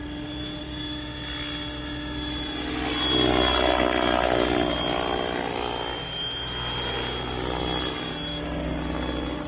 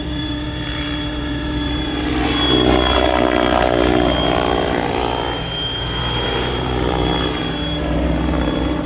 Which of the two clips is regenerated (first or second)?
second